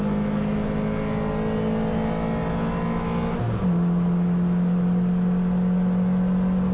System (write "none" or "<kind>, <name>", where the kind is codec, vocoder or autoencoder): none